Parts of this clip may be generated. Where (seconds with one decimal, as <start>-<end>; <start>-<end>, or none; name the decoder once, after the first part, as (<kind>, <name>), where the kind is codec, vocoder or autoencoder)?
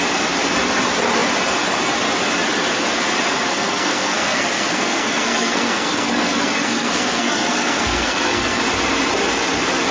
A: 3.5-8.6 (codec, SNAC)